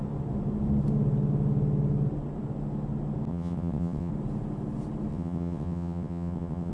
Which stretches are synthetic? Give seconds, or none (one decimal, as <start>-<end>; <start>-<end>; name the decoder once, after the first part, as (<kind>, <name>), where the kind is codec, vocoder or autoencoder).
3.3-4.1 (vocoder, WaveNeXt); 5.1-6.7